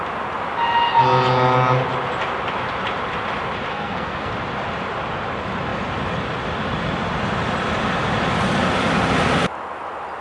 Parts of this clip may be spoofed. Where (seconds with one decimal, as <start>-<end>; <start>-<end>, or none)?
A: 3.7-4.3